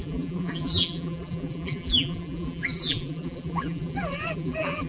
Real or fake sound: fake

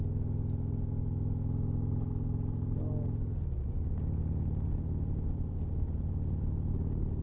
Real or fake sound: real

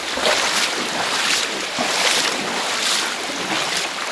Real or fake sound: real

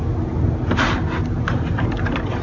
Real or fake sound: real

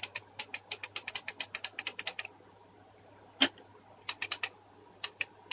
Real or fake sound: fake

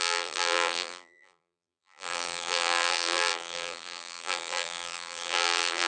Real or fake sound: fake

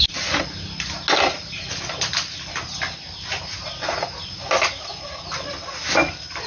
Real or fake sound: real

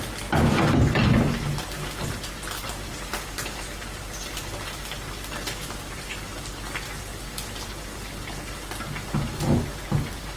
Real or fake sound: real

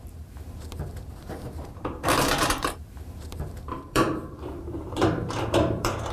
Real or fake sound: fake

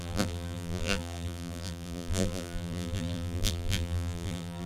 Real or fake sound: fake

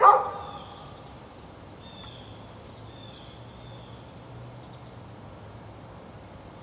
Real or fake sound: real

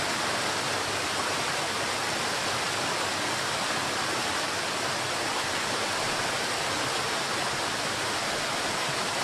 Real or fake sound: real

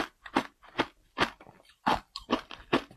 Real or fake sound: real